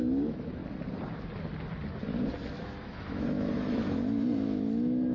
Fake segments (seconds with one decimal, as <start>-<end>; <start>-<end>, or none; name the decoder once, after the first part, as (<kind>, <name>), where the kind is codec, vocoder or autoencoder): 0.0-0.6 (autoencoder, DAC-VAE); 2.8-5.1